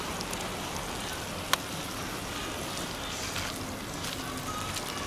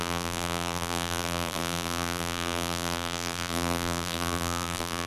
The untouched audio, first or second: first